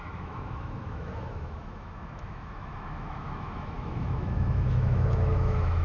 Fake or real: fake